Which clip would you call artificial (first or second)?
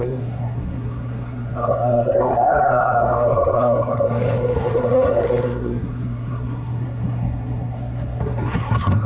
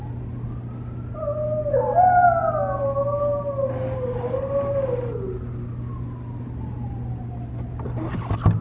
first